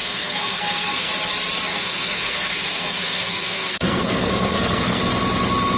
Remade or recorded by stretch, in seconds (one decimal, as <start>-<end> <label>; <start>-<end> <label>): 0.0-1.1 remade; 1.1-1.7 recorded; 1.7-5.0 remade; 5.0-5.8 recorded